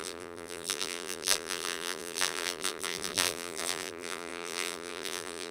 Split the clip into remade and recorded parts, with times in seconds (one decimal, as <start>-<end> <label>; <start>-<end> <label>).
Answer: 0.0-5.5 remade